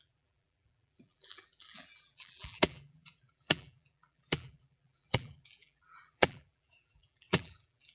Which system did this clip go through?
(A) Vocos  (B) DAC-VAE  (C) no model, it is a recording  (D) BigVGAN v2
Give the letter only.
D